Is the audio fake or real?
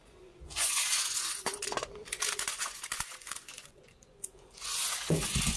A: fake